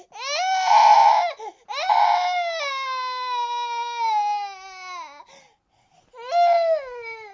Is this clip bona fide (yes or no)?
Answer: yes